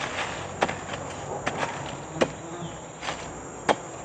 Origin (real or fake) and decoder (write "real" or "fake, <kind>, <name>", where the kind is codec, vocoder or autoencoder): real